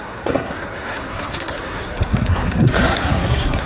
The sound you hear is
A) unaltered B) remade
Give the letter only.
B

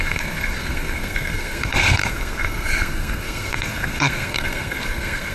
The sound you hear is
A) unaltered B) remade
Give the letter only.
B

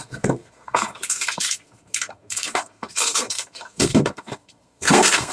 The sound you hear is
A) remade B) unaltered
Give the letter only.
A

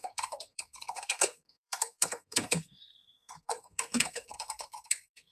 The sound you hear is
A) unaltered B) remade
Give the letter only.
B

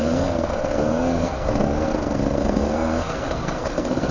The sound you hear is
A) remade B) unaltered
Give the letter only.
A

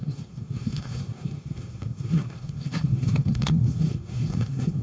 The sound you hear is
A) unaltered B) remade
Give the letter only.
B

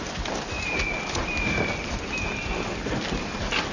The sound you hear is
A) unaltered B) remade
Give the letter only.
A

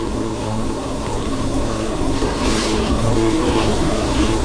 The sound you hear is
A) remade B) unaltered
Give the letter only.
A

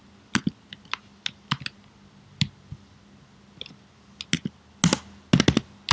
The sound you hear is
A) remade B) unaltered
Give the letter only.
B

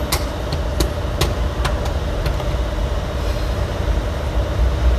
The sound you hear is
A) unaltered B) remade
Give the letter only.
A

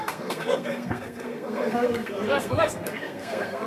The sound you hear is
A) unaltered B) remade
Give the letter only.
B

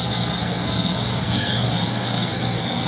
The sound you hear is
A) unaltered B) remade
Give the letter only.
B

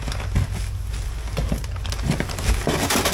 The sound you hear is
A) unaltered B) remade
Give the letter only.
A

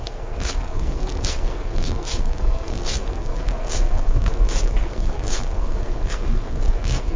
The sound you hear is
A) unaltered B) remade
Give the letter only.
B